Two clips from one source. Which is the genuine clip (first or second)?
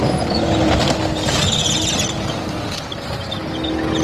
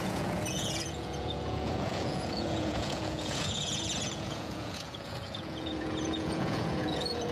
first